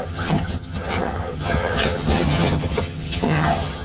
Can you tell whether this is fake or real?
fake